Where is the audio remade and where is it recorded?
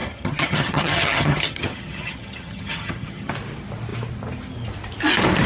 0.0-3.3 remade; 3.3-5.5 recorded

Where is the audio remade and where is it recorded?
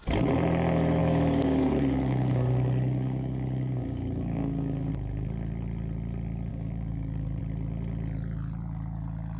0.0-1.0 recorded; 1.0-4.9 remade; 4.9-6.5 recorded; 6.5-7.4 remade; 7.4-9.4 recorded